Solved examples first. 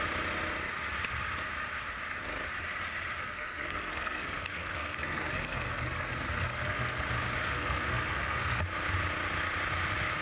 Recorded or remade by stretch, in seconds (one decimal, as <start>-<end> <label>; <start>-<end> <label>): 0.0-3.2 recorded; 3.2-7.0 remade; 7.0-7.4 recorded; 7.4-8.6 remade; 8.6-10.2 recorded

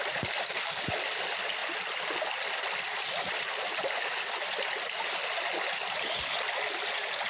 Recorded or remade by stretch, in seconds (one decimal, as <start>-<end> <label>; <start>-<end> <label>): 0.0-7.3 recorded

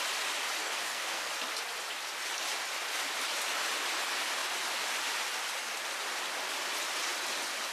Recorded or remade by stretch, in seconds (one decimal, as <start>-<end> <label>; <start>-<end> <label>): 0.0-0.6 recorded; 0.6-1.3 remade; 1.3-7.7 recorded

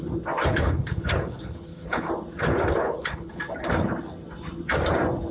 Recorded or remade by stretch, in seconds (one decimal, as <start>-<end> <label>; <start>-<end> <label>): 0.0-0.5 recorded; 0.5-2.1 remade; 2.1-2.8 recorded; 2.8-3.4 remade; 3.4-5.3 recorded